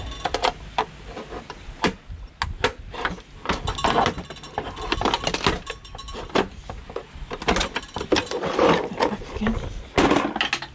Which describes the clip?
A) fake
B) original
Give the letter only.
B